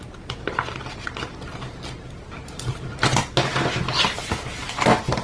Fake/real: real